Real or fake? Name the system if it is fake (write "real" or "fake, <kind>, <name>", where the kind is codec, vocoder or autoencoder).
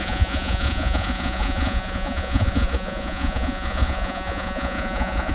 fake, vocoder, Vocos